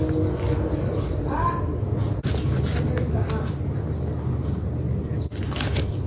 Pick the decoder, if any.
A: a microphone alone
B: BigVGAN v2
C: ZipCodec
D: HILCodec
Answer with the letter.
A